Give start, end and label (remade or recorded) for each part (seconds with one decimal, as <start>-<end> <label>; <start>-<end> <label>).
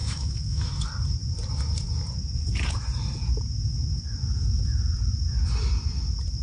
0.0-0.7 remade; 0.7-6.4 recorded